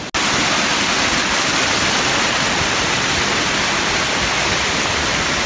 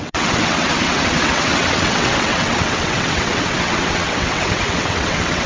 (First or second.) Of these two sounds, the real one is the first